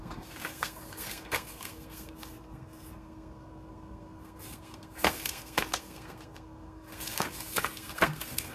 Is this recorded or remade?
remade